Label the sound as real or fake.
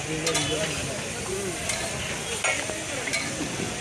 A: real